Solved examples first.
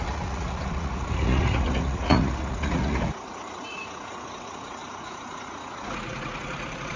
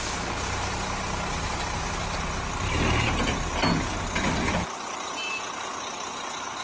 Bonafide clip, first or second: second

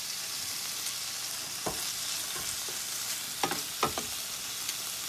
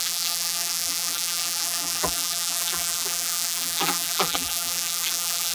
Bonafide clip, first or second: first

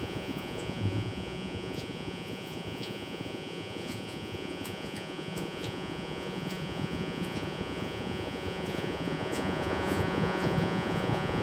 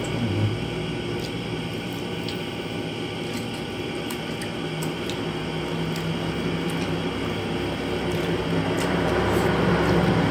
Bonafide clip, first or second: second